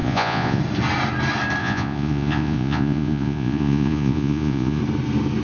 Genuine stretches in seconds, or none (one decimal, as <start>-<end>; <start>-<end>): 0.6-1.6; 4.8-5.4